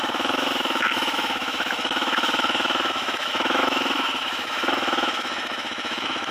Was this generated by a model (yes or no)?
yes